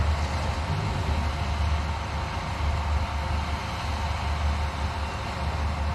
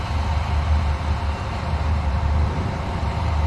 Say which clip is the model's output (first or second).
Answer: second